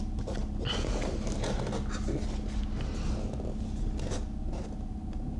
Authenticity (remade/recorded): recorded